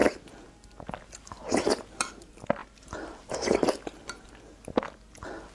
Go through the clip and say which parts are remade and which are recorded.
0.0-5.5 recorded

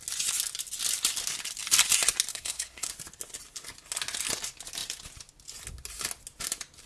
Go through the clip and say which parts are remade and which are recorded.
0.0-2.3 recorded; 2.3-2.9 remade; 2.9-6.9 recorded

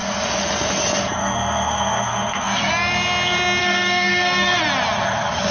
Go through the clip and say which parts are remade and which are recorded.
0.0-1.2 recorded; 1.2-2.7 remade; 2.7-3.6 recorded; 3.6-4.6 remade; 4.6-5.5 recorded

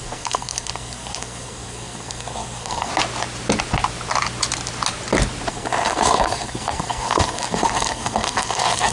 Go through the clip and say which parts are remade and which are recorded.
0.0-2.9 remade; 2.9-5.5 recorded; 5.5-8.9 remade

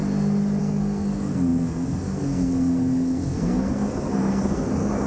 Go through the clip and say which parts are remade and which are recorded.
0.0-0.6 recorded; 0.6-5.1 remade

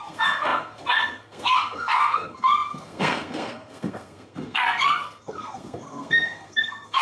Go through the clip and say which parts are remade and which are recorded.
0.0-7.0 remade

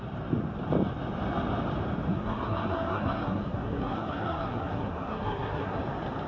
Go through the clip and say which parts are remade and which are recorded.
0.0-2.1 recorded; 2.1-5.8 remade; 5.8-6.3 recorded